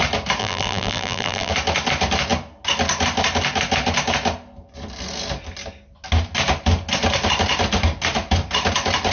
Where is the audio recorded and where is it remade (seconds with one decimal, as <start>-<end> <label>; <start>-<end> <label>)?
0.0-0.4 recorded; 0.4-1.5 remade; 1.5-9.1 recorded